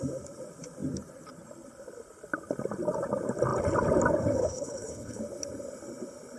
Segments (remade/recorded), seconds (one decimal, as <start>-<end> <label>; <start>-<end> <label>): 0.0-4.4 recorded; 4.4-5.2 remade; 5.2-6.4 recorded